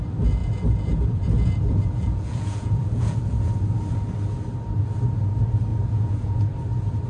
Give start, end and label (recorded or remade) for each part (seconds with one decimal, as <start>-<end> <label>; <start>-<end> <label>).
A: 0.0-0.4 recorded; 0.4-3.5 remade; 3.5-5.7 recorded; 5.7-6.4 remade; 6.4-7.1 recorded